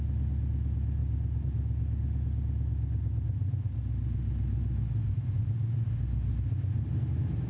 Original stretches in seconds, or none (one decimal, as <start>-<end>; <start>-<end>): 0.0-7.5